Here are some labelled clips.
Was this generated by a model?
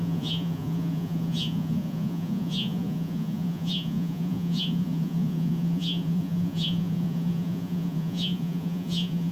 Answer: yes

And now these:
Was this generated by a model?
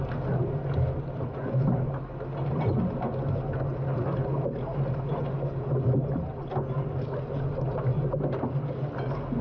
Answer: no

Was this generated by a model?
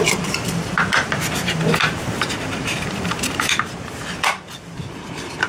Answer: yes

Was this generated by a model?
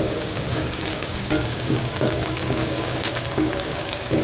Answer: yes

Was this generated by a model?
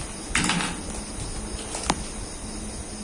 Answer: no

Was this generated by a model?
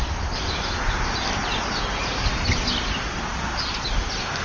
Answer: no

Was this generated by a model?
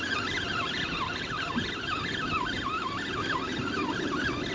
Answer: no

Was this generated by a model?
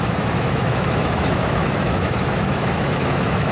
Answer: yes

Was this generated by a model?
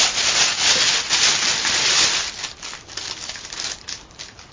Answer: no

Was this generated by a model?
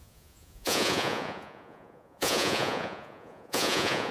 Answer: yes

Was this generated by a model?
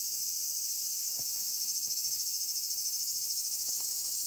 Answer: yes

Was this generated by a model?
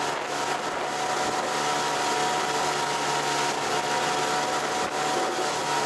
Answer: no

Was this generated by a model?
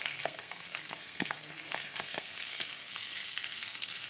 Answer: yes